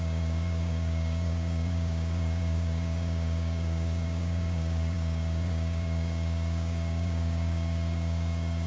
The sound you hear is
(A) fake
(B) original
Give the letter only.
A